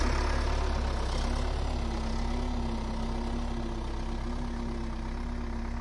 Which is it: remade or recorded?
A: recorded